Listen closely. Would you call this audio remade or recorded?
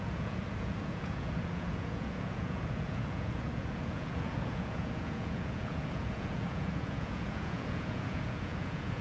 remade